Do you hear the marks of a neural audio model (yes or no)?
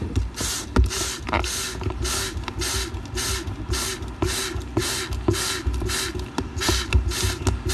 no